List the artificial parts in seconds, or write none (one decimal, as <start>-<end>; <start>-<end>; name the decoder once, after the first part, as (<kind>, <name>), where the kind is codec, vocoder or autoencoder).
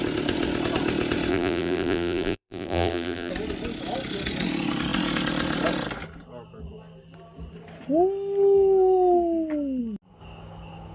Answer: 1.3-3.3 (vocoder, BigVGAN v2)